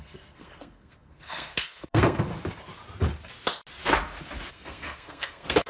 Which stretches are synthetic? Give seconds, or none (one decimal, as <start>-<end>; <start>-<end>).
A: 0.0-2.3; 4.5-5.7